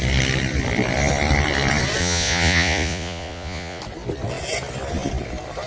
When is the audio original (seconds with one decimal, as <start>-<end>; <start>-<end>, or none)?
0.0-2.0; 3.8-5.7